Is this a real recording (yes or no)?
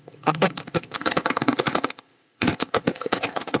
no